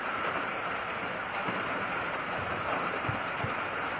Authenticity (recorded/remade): remade